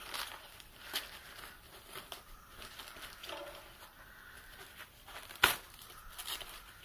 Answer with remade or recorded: recorded